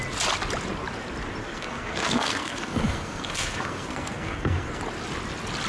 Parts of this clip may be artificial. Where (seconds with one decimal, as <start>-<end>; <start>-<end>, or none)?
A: 1.4-4.8